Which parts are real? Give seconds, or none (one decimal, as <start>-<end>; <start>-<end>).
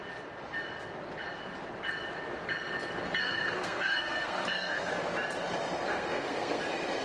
0.0-3.2; 4.9-5.9; 6.6-7.0